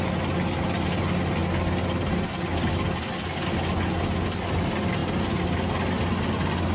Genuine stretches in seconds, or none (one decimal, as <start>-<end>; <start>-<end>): 0.0-6.7